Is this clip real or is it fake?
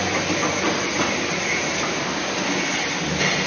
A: real